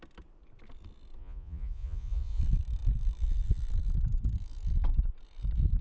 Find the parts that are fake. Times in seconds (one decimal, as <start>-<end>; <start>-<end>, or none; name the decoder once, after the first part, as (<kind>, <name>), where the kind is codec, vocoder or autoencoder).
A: 1.2-2.4 (vocoder, Vocos)